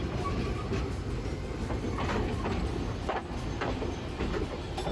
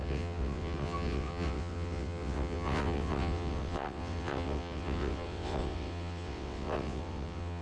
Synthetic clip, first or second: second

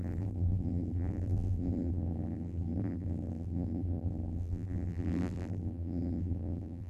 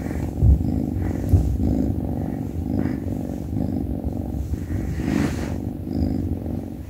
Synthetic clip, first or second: first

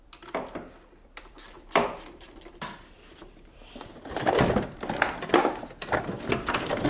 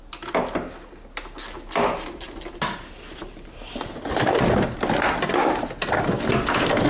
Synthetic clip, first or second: first